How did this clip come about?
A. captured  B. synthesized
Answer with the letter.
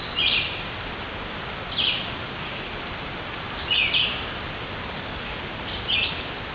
A